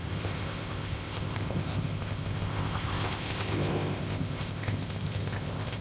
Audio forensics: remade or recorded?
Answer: remade